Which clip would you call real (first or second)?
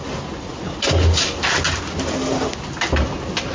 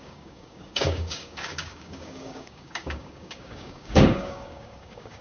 first